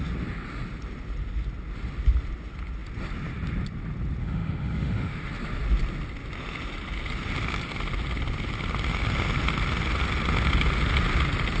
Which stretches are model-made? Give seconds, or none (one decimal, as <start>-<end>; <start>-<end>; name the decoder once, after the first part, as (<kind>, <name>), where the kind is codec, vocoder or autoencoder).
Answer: 4.2-5.3 (autoencoder, DAC-VAE)